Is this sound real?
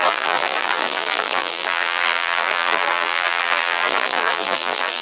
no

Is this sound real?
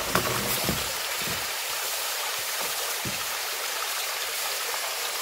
no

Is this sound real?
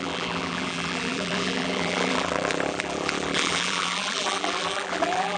no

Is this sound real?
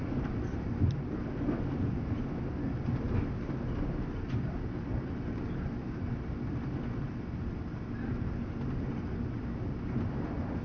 yes